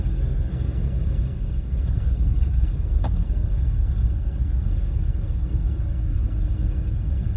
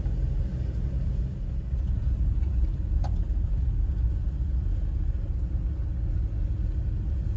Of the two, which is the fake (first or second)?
first